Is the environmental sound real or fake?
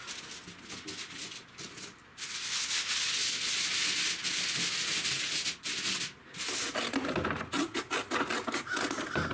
real